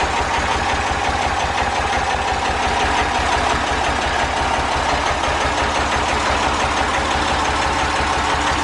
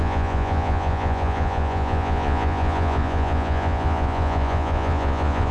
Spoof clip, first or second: second